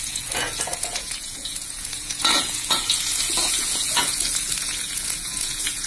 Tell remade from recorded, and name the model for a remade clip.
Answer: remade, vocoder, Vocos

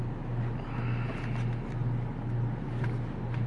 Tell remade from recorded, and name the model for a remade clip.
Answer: recorded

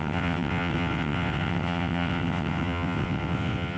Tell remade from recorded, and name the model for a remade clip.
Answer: remade, vocoder, WaveNeXt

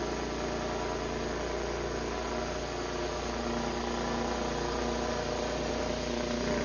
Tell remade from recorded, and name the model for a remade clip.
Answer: recorded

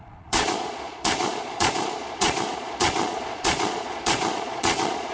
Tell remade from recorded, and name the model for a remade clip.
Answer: remade, vocoder, Vocos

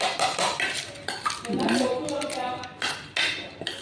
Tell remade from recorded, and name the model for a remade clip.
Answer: recorded